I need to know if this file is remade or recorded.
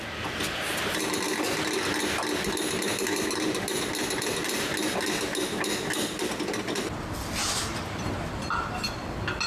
recorded